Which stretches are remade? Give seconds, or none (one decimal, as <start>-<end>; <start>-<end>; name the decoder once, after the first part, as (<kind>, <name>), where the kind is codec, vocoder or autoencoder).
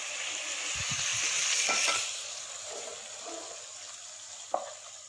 none